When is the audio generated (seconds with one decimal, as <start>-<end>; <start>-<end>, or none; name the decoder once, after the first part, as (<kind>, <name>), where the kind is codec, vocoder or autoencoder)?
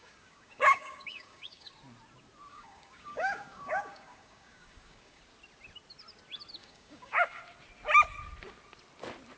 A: 0.0-1.7 (codec, DAC); 2.5-5.2; 6.6-7.4